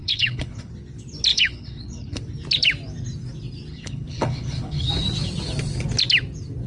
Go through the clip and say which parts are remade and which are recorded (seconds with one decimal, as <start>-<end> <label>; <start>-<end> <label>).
0.0-0.7 remade; 0.7-1.3 recorded; 1.3-2.2 remade; 2.2-3.7 recorded; 3.7-4.9 remade; 4.9-6.7 recorded